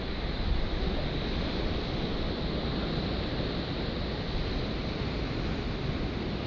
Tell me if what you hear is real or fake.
real